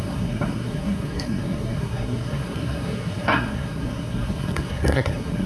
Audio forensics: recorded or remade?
remade